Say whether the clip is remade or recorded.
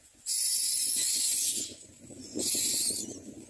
remade